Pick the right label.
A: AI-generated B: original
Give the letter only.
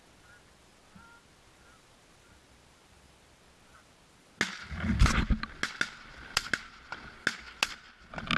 B